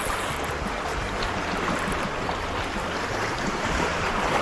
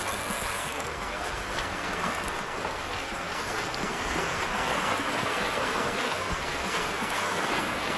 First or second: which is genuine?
first